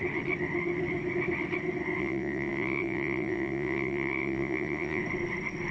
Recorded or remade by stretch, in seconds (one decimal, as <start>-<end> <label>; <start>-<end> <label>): 0.0-2.0 recorded; 2.0-5.0 remade; 5.0-5.7 recorded